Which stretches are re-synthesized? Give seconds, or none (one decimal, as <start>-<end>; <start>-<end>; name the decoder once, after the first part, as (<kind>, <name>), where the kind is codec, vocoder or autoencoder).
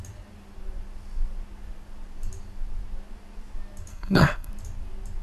3.9-4.5 (codec, SNAC)